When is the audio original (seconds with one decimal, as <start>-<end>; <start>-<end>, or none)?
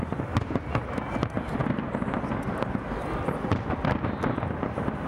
0.0-5.1